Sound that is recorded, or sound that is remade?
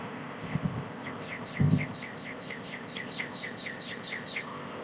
remade